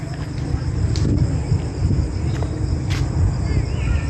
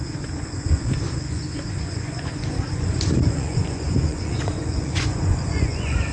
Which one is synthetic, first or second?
second